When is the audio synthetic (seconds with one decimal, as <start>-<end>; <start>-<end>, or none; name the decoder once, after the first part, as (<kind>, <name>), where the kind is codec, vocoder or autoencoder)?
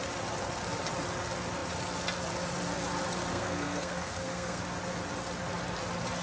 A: 3.3-4.6 (codec, SNAC)